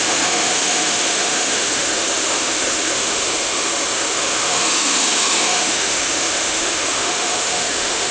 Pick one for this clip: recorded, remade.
remade